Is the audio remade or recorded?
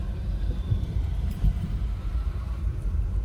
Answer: remade